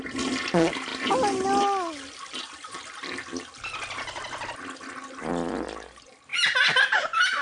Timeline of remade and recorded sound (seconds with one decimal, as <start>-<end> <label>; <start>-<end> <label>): 0.0-7.4 recorded